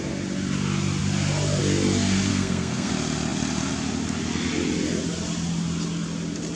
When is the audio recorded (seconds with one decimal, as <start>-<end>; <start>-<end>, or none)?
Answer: 0.0-2.3; 2.9-6.6